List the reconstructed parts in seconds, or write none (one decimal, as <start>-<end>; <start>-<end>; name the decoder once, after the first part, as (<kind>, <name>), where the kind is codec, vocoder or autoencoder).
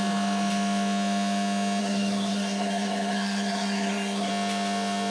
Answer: 1.8-4.3 (codec, SNAC)